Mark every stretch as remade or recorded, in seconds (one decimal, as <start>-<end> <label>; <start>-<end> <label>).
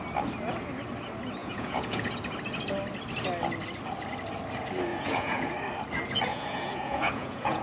0.0-1.4 recorded; 1.4-2.1 remade; 2.1-4.9 recorded; 4.9-5.5 remade; 5.5-6.3 recorded; 6.3-7.6 remade